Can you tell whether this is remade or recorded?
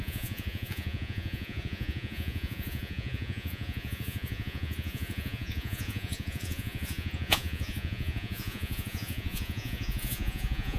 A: remade